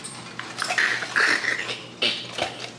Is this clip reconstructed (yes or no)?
no